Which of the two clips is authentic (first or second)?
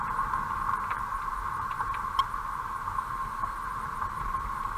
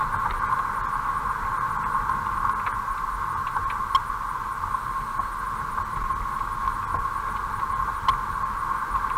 second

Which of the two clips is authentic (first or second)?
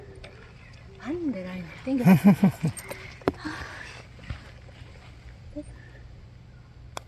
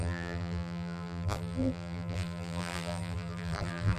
first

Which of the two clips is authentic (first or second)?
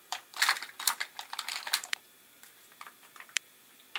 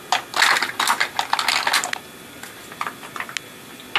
second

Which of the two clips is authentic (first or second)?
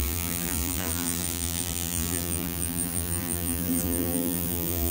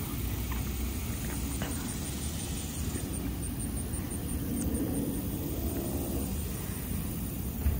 second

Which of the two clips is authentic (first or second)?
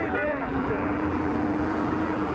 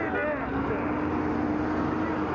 second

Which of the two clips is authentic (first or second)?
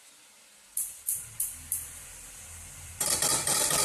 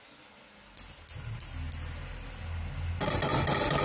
second